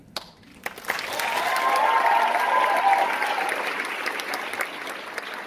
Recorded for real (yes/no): yes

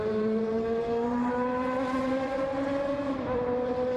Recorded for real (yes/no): no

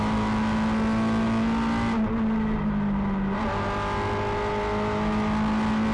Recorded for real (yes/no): yes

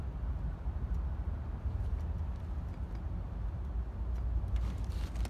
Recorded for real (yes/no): yes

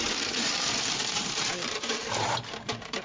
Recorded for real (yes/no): no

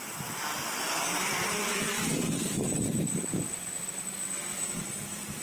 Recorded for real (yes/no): no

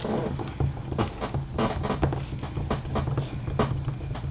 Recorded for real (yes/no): yes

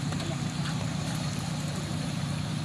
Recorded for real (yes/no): no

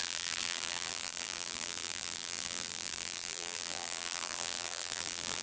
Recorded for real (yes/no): no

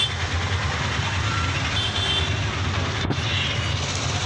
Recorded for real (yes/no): yes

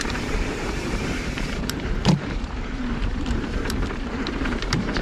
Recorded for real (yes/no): no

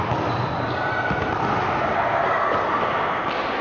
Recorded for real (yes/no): yes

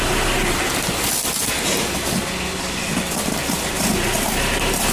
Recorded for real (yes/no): yes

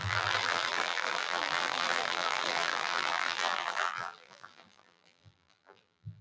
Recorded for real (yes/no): no